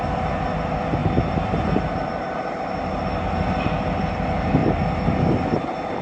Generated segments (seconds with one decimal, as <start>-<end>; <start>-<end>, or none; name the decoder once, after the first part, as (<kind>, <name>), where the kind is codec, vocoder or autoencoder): none